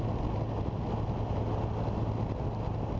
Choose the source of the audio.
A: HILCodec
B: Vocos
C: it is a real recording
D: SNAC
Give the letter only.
C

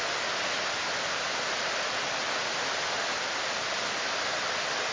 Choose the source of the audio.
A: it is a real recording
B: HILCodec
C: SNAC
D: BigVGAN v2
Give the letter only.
A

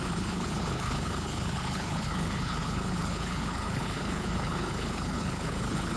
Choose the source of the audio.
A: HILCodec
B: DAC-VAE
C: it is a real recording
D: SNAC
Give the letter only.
A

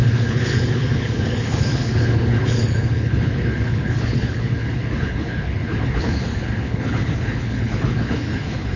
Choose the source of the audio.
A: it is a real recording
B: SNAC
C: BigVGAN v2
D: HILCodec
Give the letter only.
D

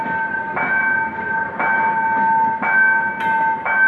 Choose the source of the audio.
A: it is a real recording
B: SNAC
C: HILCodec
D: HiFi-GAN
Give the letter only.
A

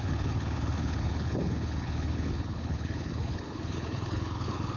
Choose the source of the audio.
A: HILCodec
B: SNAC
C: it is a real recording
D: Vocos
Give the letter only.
A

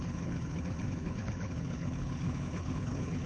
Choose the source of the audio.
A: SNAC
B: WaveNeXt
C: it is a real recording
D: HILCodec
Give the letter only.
D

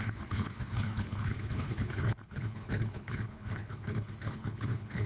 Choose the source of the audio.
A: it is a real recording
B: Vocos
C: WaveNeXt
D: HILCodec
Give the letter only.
D